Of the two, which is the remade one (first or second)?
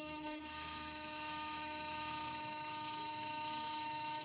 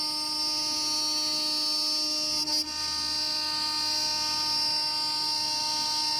first